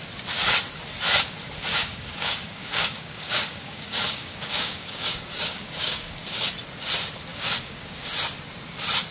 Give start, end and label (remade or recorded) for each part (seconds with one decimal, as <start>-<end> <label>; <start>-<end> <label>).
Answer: 0.0-1.7 recorded; 1.7-6.5 remade; 6.5-7.3 recorded; 7.3-8.0 remade; 8.0-9.1 recorded